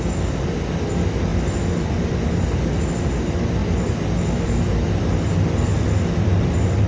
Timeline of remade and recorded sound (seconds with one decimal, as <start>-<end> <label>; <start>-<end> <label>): 0.0-6.9 recorded